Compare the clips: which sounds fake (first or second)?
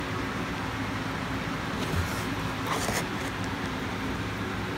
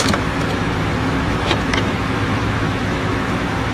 second